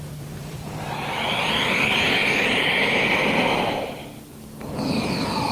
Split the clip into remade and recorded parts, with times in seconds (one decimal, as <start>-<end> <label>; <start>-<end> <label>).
0.0-2.2 remade; 2.2-4.8 recorded; 4.8-5.5 remade